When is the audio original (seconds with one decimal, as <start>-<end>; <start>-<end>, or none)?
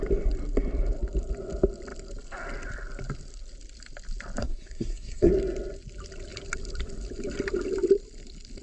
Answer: 0.0-4.4; 5.3-8.6